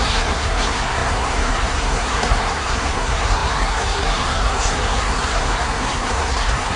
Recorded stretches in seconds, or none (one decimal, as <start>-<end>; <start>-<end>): none